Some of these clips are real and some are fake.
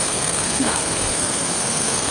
fake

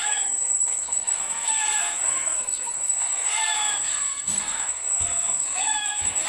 fake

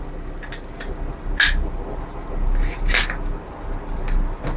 real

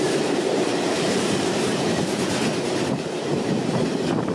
fake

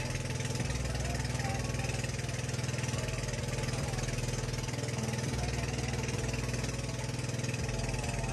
real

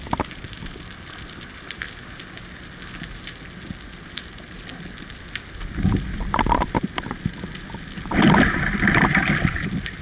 real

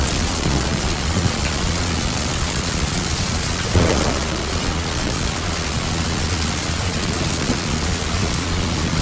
fake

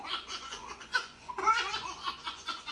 fake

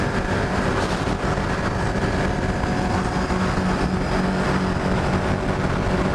real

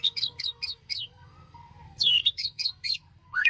fake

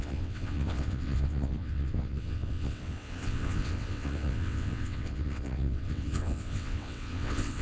fake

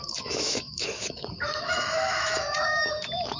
fake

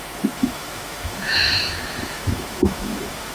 fake